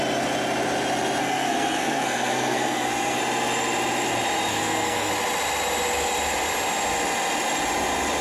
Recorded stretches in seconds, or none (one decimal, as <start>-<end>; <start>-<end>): 0.0-1.2; 3.2-4.5; 5.1-8.2